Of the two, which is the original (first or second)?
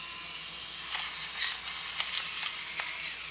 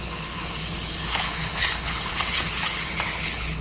first